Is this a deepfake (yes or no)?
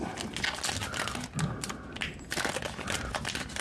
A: no